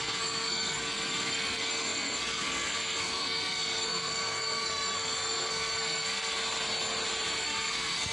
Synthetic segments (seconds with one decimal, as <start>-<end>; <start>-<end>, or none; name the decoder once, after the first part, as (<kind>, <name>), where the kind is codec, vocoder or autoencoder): 0.0-6.4 (codec, SNAC); 7.4-8.1